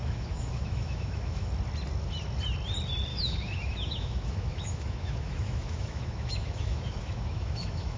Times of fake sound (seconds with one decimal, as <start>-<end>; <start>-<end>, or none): 0.0-1.5; 3.1-8.0